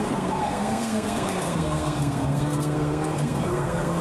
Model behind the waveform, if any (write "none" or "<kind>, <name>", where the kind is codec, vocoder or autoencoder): codec, SNAC